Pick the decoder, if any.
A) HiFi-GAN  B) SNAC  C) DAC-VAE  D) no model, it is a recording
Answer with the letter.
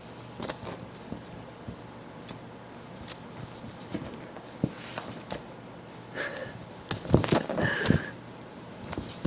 D